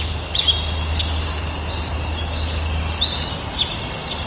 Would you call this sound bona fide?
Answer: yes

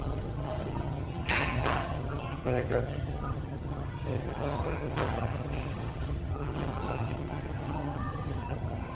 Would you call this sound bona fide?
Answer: no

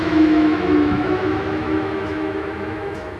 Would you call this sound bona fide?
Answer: no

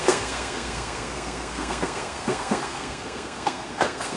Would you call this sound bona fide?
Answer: no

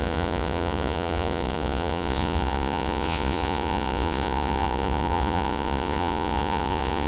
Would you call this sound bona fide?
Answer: no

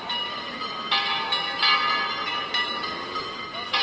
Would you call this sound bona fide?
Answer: yes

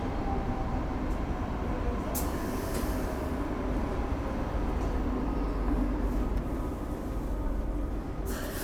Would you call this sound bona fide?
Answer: yes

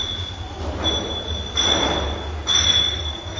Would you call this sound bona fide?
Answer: yes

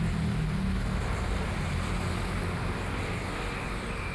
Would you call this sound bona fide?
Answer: yes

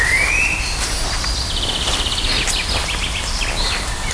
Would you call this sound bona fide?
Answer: yes